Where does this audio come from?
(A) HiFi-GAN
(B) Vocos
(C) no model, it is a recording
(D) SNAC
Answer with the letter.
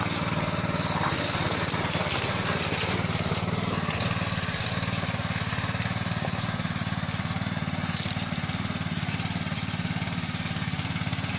C